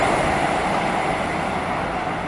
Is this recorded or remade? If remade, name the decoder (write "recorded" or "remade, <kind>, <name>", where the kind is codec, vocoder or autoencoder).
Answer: recorded